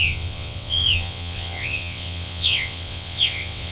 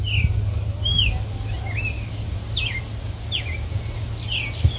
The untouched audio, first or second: second